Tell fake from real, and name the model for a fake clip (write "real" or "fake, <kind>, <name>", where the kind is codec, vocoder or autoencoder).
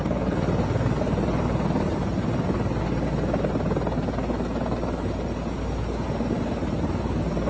real